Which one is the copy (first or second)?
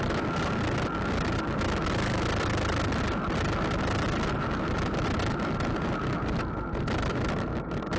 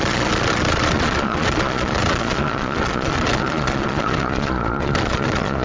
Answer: second